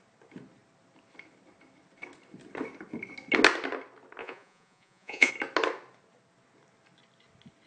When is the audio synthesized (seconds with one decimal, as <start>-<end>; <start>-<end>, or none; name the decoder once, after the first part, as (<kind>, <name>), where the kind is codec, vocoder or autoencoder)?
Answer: 4.2-5.3 (vocoder, Vocos)